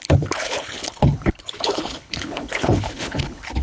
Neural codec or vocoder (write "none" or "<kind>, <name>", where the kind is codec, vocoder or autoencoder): codec, HILCodec